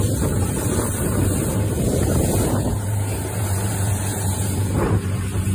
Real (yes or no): no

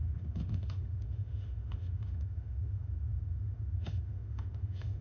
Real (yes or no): no